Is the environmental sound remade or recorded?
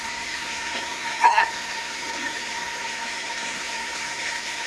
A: remade